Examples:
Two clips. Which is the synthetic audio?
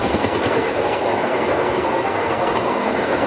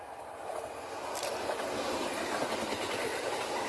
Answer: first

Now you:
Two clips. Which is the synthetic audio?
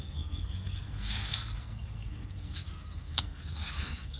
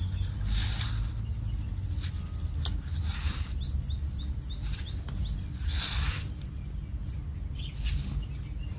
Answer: first